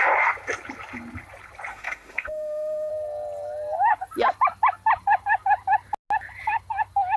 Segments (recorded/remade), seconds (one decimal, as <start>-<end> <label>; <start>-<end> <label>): 0.0-1.7 recorded; 1.7-2.9 remade; 2.9-7.2 recorded